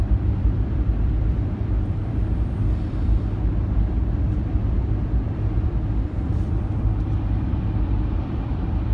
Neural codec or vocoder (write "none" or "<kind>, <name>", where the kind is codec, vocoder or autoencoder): vocoder, BigVGAN v2